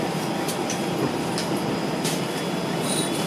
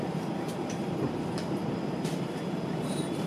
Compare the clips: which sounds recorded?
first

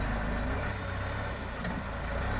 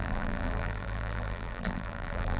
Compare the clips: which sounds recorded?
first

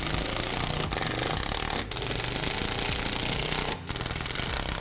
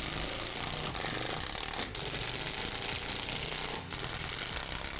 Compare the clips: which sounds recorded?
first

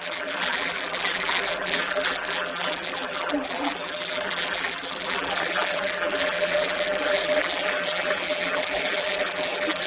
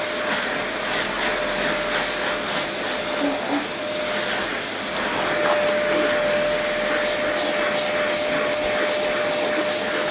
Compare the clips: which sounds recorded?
second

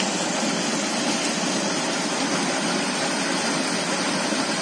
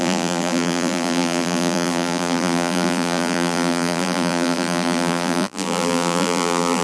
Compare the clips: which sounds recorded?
first